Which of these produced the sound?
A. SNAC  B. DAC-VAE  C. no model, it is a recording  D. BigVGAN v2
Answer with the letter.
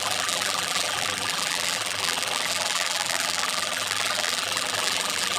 D